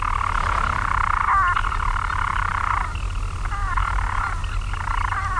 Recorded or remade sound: recorded